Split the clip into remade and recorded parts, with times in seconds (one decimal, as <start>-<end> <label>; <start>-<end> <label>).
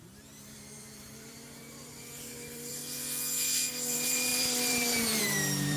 0.0-2.8 remade; 2.8-3.7 recorded; 3.7-5.8 remade